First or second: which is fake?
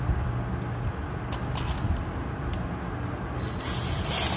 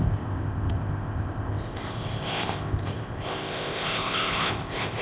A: second